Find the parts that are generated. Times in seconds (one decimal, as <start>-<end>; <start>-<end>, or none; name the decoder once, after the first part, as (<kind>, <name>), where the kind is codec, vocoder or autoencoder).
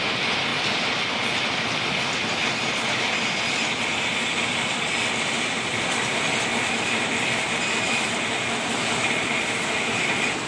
none